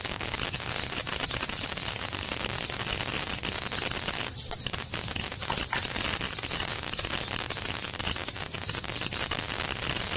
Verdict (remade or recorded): remade